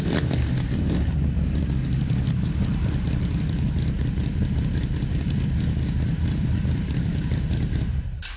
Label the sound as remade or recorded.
remade